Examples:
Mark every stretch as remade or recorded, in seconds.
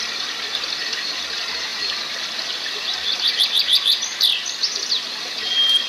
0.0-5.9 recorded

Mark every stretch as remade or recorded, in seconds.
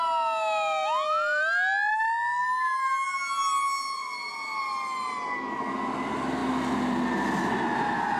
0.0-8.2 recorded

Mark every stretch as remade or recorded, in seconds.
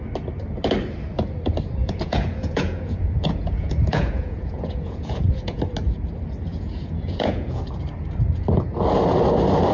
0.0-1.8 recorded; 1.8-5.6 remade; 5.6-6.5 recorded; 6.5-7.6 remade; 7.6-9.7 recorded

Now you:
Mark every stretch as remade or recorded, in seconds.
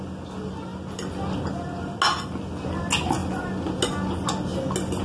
0.0-5.0 recorded